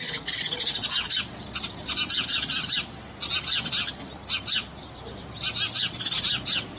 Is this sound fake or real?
fake